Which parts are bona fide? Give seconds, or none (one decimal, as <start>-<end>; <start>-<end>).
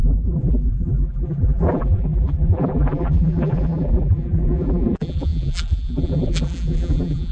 none